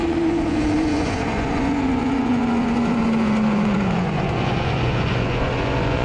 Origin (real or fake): fake